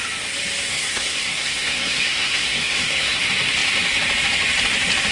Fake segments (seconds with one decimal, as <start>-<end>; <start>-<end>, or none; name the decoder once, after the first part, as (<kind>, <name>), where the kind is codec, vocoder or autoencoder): 0.7-3.2 (codec, SNAC)